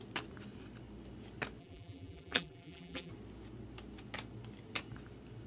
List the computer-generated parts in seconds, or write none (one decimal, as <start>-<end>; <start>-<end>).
1.6-3.1